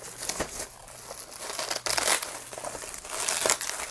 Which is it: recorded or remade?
recorded